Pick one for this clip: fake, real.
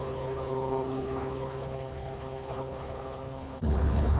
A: fake